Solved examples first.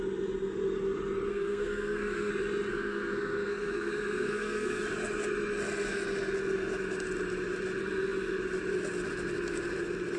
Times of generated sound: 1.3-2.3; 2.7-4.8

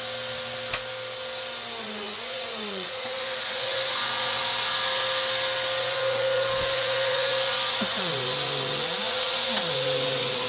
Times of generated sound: 1.8-4.4; 5.8-10.5